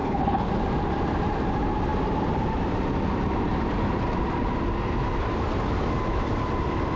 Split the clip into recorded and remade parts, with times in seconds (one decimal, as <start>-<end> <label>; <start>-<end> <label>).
0.0-0.5 remade; 0.5-7.0 recorded